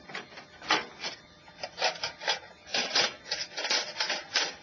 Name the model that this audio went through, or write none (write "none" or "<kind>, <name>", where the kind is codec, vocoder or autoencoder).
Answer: none